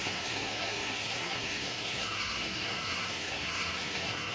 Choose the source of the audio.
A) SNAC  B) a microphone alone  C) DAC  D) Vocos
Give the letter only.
A